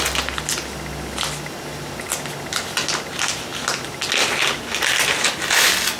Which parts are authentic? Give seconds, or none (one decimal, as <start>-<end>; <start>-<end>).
0.0-6.0

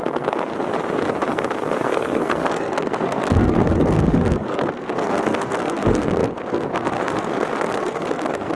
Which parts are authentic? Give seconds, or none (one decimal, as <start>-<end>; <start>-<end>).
0.5-1.3